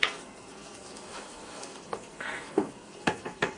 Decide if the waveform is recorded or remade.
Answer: remade